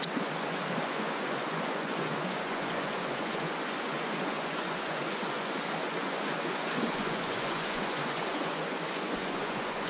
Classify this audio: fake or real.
fake